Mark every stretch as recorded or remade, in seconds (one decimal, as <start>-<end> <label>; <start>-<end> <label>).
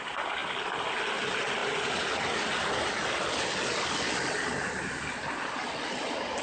0.0-6.4 recorded